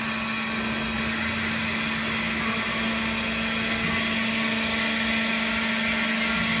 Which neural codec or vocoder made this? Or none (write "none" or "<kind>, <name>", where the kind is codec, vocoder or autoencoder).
none